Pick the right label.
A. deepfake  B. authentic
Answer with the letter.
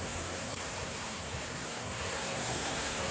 A